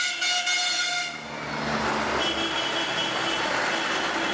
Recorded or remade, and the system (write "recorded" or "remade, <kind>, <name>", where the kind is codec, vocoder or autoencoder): recorded